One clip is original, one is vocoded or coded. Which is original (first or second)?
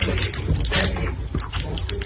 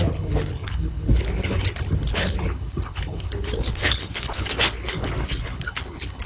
first